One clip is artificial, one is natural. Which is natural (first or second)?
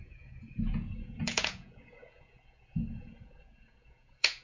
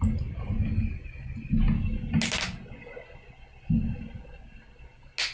second